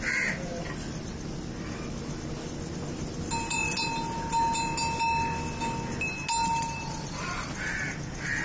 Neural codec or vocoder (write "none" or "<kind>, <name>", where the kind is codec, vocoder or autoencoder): none